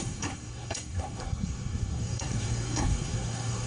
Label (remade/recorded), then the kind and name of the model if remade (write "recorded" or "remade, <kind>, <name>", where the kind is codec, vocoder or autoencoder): remade, codec, SNAC